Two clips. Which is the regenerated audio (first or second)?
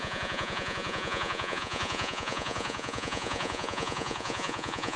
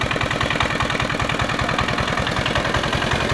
first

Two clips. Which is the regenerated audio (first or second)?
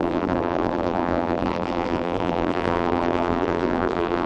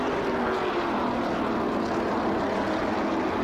first